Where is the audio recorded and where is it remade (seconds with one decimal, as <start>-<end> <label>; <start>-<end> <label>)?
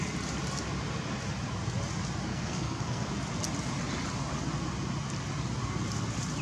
0.0-2.3 recorded; 2.3-3.1 remade; 3.1-6.4 recorded